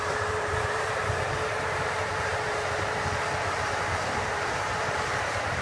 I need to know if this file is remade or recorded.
remade